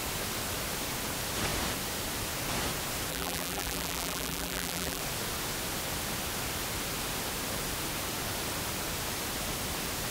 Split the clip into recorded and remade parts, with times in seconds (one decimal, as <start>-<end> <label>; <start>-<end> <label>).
0.0-3.1 recorded; 3.1-5.0 remade; 5.0-10.1 recorded